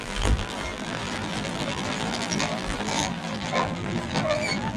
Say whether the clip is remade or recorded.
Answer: remade